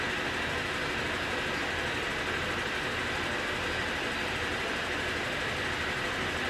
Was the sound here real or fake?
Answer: fake